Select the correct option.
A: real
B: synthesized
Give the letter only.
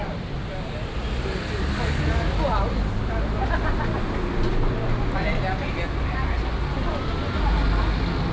A